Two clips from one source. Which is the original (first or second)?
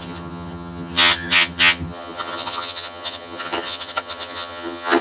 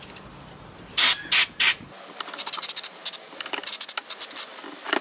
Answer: second